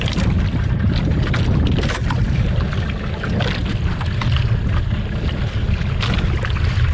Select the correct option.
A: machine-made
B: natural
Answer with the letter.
B